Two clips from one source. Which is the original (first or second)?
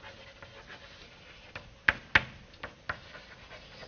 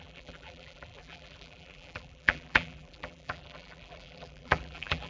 first